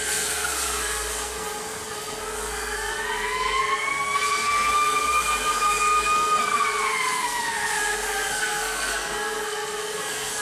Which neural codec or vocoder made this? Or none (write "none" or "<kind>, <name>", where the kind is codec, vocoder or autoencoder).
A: codec, SNAC